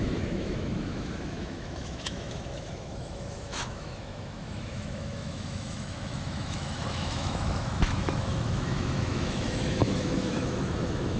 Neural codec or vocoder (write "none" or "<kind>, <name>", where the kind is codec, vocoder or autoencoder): autoencoder, DAC-VAE